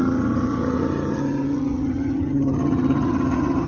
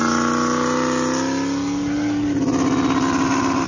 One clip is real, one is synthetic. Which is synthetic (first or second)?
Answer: first